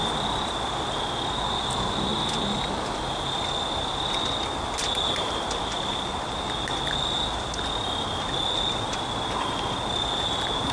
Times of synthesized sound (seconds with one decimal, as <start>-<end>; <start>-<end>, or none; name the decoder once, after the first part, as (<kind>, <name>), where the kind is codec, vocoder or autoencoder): none